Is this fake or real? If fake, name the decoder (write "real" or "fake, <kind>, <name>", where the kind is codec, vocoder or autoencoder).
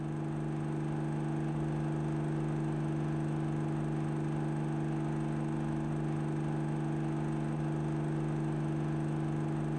real